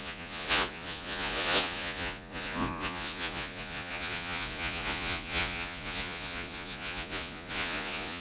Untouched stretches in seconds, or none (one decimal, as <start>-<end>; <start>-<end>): none